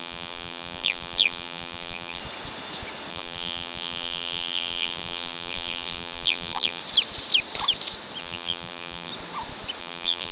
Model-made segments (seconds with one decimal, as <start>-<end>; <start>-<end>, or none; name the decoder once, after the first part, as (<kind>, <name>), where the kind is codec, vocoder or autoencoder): 0.0-2.2 (vocoder, BigVGAN v2); 3.1-6.8; 8.2-9.1; 9.8-10.3